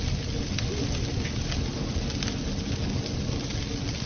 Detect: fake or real real